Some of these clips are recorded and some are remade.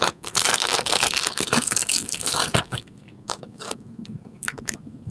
remade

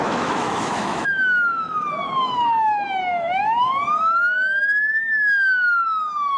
remade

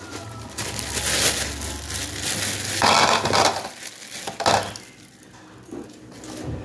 recorded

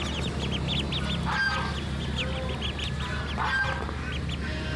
recorded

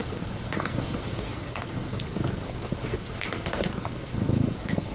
remade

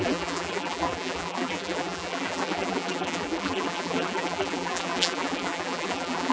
remade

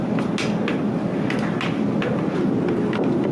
recorded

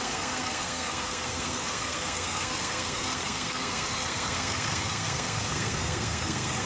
remade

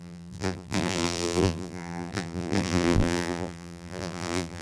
remade